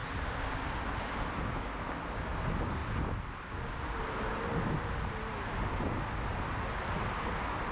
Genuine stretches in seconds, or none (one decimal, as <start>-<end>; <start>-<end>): 0.0-7.7